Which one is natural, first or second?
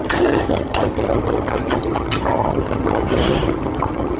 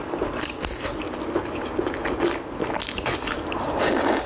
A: second